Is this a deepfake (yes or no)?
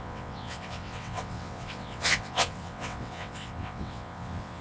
yes